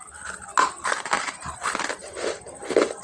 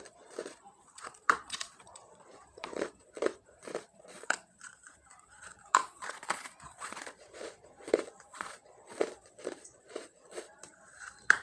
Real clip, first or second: first